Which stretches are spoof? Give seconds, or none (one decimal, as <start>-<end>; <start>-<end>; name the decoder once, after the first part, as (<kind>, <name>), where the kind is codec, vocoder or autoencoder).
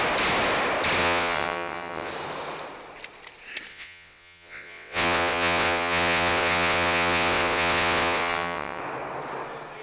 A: 1.0-2.1 (vocoder, WaveNeXt); 3.7-8.8